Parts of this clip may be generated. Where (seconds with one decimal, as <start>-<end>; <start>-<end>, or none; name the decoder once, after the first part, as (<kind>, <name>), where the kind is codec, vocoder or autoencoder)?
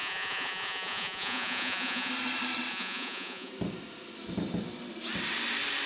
0.0-2.1 (vocoder, Vocos); 2.7-3.5